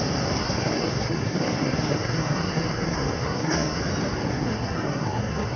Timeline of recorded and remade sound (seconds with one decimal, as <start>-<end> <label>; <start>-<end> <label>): 0.0-0.4 recorded; 0.4-3.8 remade; 3.8-4.3 recorded; 4.3-5.6 remade

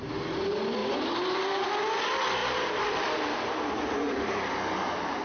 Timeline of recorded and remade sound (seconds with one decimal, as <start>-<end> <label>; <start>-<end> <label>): 0.0-0.8 recorded; 0.8-1.7 remade; 1.7-2.4 recorded; 2.4-5.2 remade

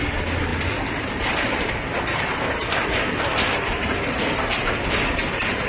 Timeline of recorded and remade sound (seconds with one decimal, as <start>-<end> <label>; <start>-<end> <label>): 0.0-0.5 recorded; 0.5-1.7 remade; 1.7-2.1 recorded; 2.1-5.7 remade

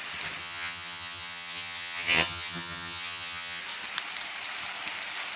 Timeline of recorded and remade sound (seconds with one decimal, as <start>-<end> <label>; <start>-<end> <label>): 0.0-0.4 recorded; 0.4-3.6 remade; 3.6-5.4 recorded

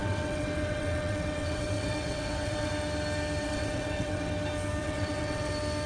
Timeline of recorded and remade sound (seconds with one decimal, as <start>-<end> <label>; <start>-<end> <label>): 0.0-2.7 remade; 2.7-3.4 recorded; 3.4-4.3 remade; 4.3-4.8 recorded; 4.8-5.5 remade; 5.5-5.9 recorded

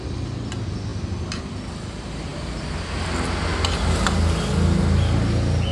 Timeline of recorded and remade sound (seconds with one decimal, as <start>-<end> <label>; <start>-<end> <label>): 0.0-5.7 recorded

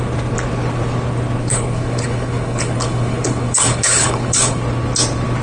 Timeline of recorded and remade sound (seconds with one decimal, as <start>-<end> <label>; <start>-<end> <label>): 0.0-1.4 recorded; 1.4-4.6 remade; 4.6-5.4 recorded

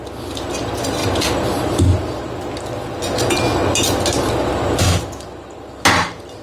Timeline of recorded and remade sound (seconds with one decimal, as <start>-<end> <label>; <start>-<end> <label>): 0.0-6.4 recorded